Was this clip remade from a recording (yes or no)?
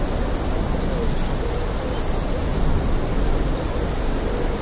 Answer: no